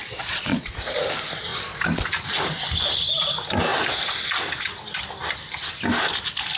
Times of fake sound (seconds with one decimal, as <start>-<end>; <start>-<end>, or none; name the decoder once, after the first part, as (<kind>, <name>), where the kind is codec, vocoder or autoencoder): 0.0-0.8 (vocoder, Vocos)